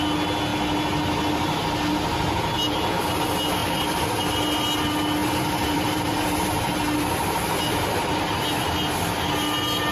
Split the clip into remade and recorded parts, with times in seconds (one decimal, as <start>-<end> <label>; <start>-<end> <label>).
0.0-3.6 recorded; 3.6-4.2 remade; 4.2-5.2 recorded; 5.2-8.3 remade; 8.3-9.9 recorded